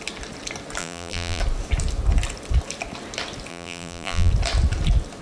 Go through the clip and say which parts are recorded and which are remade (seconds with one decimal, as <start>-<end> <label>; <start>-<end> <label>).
0.0-0.8 recorded; 0.8-1.4 remade; 1.4-3.5 recorded; 3.5-4.3 remade; 4.3-5.2 recorded